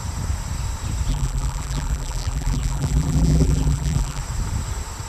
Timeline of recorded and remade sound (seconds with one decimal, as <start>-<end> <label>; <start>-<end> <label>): 0.0-1.1 recorded; 1.1-4.2 remade; 4.2-5.1 recorded